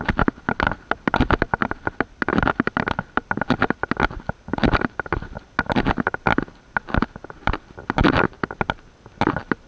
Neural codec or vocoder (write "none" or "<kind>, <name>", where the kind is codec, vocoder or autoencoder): none